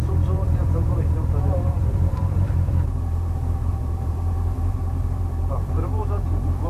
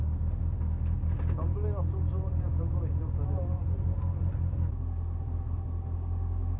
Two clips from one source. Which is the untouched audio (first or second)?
second